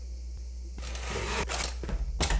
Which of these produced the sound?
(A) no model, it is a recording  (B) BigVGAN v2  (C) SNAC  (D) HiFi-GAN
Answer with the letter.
A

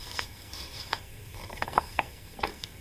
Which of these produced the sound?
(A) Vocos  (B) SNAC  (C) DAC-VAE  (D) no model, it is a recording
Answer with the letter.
B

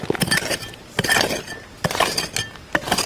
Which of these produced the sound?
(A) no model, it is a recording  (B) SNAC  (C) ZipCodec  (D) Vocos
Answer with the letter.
A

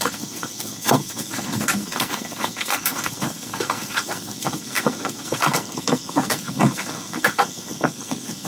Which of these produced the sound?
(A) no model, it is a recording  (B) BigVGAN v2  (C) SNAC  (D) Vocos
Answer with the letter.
C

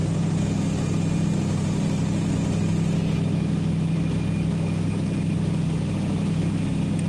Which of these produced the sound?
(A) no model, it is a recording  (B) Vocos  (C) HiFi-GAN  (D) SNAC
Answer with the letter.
A